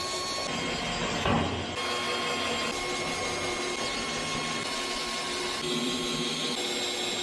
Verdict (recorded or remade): recorded